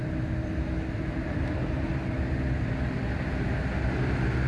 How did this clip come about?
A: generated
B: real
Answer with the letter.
B